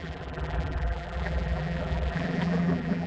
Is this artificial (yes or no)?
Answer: yes